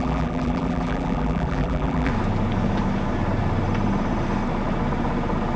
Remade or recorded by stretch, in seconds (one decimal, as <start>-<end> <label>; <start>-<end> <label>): 0.0-2.1 remade; 2.1-5.6 recorded